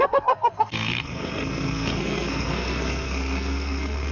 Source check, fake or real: fake